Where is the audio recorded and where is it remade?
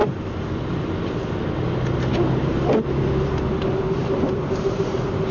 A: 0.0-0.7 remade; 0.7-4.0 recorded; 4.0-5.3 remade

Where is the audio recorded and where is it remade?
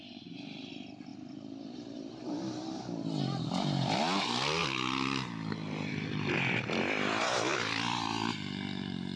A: 0.0-4.6 remade; 4.6-5.5 recorded; 5.5-9.2 remade